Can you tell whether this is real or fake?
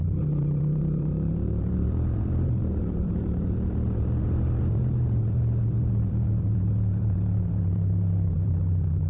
fake